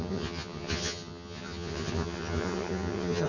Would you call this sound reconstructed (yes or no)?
yes